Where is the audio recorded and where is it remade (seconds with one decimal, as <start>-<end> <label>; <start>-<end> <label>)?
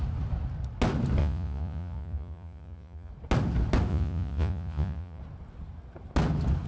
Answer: 0.0-1.2 recorded; 1.2-3.1 remade; 3.1-3.9 recorded; 3.9-5.2 remade; 5.2-6.7 recorded